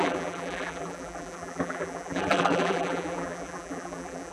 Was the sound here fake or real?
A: fake